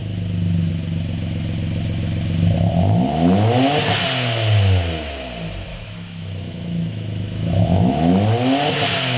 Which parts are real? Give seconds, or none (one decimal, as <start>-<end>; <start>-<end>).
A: 0.0-5.7; 7.8-9.2